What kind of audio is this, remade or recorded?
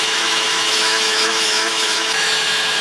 remade